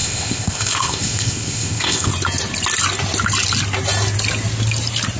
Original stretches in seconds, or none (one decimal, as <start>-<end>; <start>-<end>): 2.1-5.2